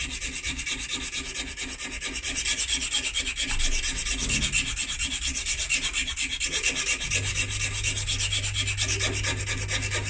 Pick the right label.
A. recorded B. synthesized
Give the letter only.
A